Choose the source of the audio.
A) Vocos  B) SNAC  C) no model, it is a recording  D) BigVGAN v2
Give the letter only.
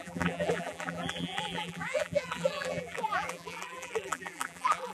D